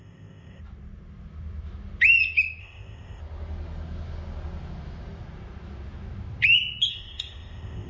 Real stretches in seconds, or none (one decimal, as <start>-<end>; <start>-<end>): 0.6-2.6; 3.2-6.9